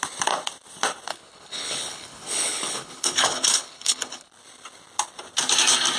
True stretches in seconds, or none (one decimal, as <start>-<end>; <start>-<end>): 0.0-1.1; 4.3-6.0

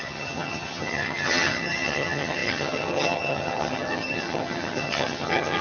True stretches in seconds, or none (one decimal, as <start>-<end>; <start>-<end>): none